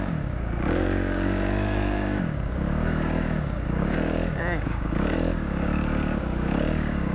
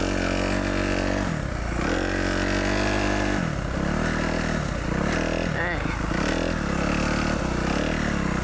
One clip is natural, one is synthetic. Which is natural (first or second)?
second